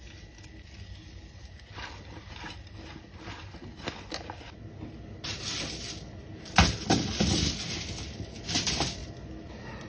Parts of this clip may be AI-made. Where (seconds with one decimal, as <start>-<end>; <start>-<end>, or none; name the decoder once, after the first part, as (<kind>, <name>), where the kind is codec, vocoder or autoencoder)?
none